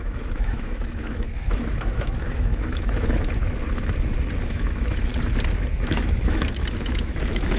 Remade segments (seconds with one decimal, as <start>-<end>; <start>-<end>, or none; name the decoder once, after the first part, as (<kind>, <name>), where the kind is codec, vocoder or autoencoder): 0.0-3.4 (autoencoder, DAC-VAE); 4.5-5.1; 5.7-7.6

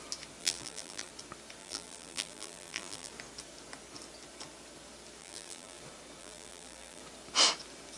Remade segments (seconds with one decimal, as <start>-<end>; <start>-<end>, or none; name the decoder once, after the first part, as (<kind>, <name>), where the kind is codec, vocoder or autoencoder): 0.4-1.1 (vocoder, BigVGAN v2); 1.6-3.1; 5.2-5.8; 6.2-7.0

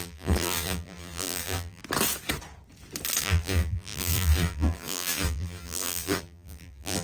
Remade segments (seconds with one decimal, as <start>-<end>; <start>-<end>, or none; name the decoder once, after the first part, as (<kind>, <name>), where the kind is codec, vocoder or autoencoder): 0.0-1.8 (vocoder, BigVGAN v2); 3.2-7.0

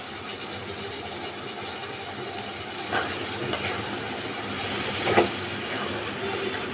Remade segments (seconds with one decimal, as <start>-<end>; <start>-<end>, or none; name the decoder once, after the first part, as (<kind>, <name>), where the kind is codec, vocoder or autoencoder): none

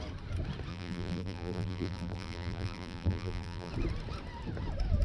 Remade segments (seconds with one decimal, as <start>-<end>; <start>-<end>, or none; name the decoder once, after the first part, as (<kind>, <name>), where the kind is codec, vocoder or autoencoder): 0.7-3.7 (vocoder, BigVGAN v2)

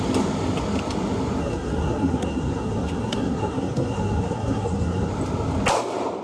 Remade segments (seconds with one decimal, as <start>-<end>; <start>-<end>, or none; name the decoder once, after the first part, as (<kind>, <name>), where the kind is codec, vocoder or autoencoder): 1.4-5.1 (codec, SNAC)

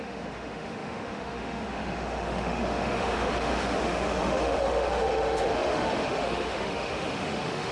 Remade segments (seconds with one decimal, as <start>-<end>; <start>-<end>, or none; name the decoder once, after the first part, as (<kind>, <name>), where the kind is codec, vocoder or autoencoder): 0.0-7.7 (autoencoder, DAC-VAE)